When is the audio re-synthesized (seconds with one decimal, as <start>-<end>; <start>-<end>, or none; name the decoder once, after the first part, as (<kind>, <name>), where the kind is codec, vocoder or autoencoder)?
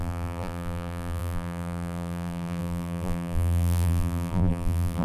0.0-5.0 (vocoder, BigVGAN v2)